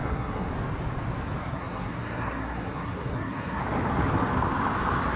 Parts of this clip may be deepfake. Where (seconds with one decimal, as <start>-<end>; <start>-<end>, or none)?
0.0-0.5; 1.4-3.6